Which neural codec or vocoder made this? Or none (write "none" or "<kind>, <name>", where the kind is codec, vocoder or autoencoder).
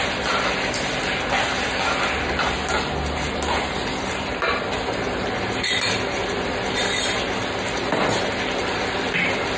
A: none